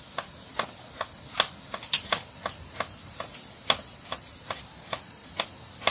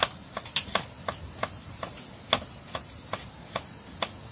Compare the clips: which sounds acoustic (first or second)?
second